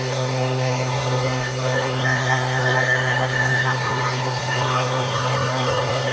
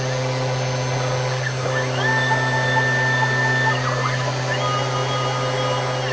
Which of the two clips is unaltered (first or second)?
second